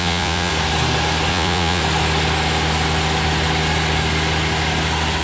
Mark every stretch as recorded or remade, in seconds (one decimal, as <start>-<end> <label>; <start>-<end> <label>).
0.0-0.5 remade; 0.5-1.3 recorded; 1.3-1.8 remade; 1.8-5.2 recorded